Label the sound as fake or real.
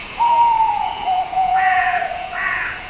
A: fake